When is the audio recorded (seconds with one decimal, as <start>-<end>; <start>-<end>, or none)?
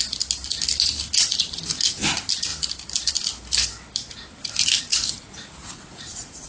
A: 0.0-5.6